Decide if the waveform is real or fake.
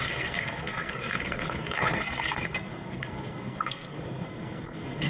fake